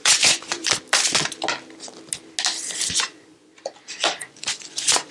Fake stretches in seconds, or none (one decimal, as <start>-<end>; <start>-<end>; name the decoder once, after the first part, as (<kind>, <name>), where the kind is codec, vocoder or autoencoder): 0.0-0.6 (vocoder, Vocos); 2.9-3.5; 4.2-5.1